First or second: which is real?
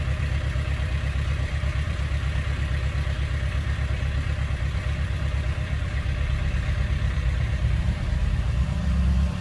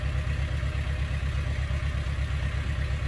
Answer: second